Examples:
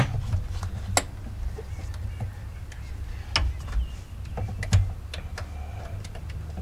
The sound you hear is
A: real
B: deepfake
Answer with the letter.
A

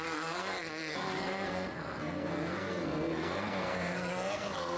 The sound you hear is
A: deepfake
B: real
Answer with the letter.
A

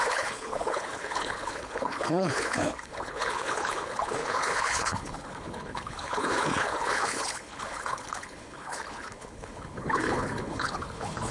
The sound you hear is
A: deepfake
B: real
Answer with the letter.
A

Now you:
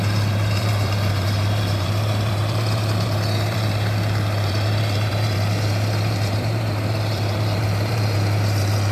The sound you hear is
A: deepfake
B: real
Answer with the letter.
A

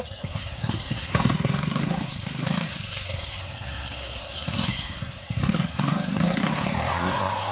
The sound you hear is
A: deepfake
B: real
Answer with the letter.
A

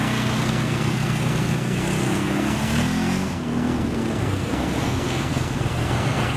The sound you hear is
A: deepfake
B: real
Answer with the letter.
A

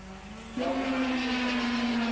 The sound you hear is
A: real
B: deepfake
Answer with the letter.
A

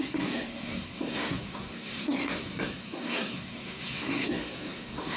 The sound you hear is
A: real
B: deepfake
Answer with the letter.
B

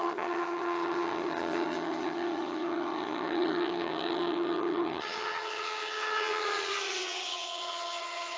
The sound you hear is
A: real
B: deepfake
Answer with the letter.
B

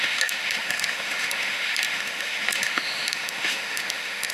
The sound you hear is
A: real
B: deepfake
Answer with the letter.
B